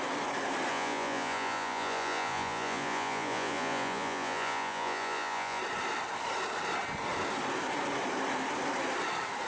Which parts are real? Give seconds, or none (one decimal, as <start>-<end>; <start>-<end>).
0.0-0.7; 5.6-9.5